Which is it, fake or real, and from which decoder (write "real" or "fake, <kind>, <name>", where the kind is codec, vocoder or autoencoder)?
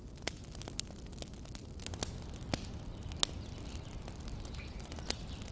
real